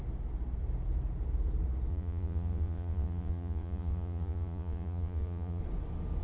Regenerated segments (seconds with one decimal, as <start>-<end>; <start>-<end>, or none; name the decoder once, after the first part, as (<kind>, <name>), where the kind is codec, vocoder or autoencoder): 1.9-5.6 (vocoder, Vocos)

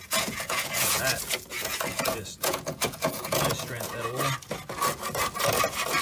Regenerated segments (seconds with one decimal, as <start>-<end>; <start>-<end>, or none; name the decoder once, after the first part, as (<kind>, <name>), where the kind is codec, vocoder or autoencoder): 0.0-1.0 (vocoder, Vocos); 1.5-3.9

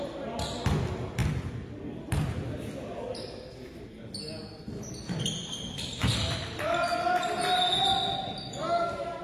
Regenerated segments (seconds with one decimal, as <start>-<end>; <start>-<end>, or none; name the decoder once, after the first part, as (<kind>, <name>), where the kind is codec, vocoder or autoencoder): none

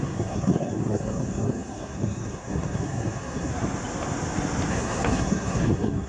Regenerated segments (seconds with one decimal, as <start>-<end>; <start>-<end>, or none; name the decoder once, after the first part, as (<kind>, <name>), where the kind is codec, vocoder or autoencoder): 0.0-3.5 (codec, SNAC); 4.7-6.1

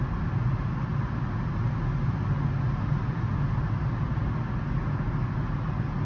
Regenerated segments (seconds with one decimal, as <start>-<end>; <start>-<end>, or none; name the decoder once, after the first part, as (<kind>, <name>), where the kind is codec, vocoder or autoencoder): none

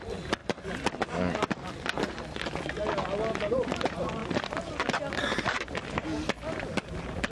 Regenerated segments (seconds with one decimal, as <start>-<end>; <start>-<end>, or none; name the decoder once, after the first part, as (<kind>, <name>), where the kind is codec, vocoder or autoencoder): none